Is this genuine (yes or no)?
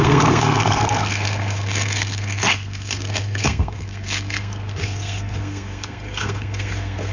no